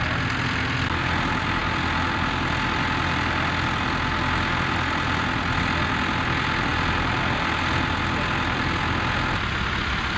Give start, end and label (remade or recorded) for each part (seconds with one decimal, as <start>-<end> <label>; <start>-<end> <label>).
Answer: 0.0-10.2 recorded